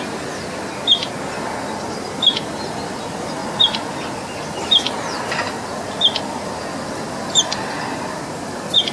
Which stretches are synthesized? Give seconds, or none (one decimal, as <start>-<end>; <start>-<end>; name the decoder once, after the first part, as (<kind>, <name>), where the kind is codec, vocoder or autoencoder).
none